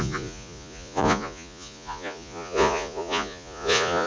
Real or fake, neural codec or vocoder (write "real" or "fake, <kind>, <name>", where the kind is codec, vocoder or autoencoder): fake, vocoder, Vocos